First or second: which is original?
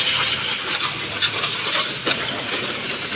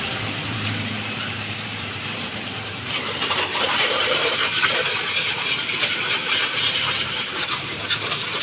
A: first